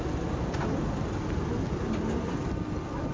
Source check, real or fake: real